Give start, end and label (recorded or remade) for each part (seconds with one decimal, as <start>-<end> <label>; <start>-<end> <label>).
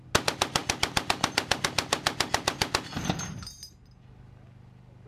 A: 0.0-5.1 recorded